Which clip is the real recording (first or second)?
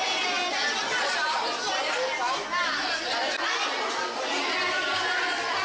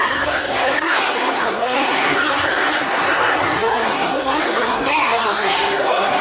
first